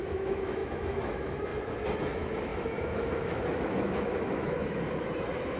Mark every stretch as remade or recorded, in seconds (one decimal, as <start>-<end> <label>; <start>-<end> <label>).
0.0-1.5 remade; 1.5-2.0 recorded; 2.0-5.6 remade